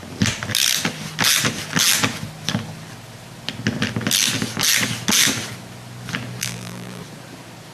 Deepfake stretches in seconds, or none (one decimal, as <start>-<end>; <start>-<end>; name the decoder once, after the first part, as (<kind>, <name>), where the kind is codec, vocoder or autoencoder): 6.4-7.0 (vocoder, BigVGAN v2)